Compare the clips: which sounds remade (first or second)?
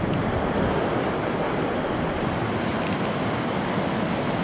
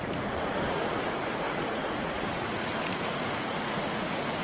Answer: second